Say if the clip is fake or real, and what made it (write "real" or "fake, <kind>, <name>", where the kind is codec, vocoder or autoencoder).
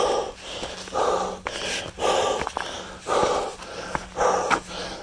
real